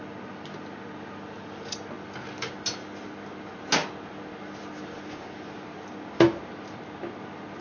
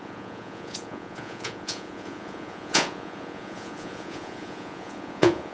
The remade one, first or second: second